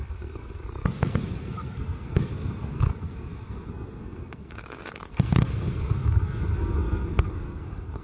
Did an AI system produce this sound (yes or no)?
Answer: yes